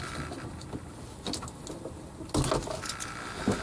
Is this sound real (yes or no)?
yes